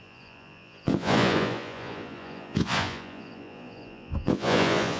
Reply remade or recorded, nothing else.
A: remade